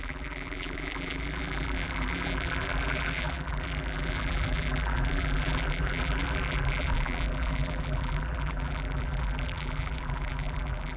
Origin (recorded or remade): remade